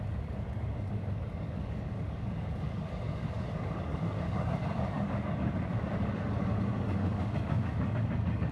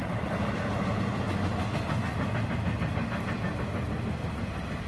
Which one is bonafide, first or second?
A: second